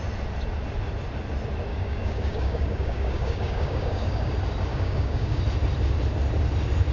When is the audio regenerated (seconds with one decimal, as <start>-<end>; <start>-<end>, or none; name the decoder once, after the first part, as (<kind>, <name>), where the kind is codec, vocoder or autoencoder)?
1.7-4.3 (codec, DAC); 4.7-5.4